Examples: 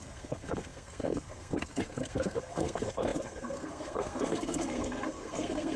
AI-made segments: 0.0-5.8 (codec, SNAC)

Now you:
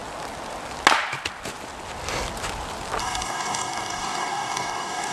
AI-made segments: 3.0-5.1 (codec, DAC)

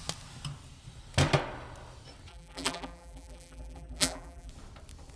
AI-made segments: 2.3-4.5 (vocoder, BigVGAN v2)

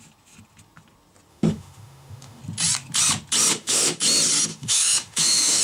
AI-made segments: 1.3-2.4 (autoencoder, DAC-VAE); 3.5-4.0; 4.5-5.6

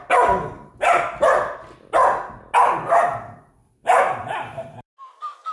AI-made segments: 2.6-4.9 (vocoder, BigVGAN v2)

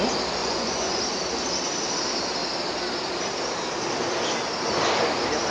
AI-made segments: 0.4-1.0 (vocoder, Vocos)

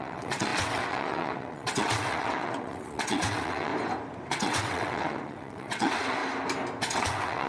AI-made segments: 0.0-3.7 (vocoder, WaveNeXt); 4.3-6.2; 6.9-7.5

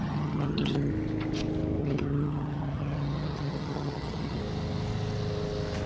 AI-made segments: 0.0-0.9 (vocoder, HiFi-GAN); 1.8-4.4